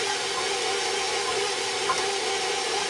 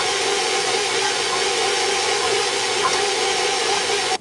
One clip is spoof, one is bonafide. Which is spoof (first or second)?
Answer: second